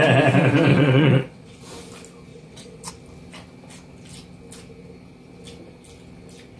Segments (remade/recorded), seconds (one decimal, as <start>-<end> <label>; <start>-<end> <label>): 0.0-0.7 recorded; 0.7-1.6 remade; 1.6-2.3 recorded; 2.3-2.9 remade; 2.9-6.6 recorded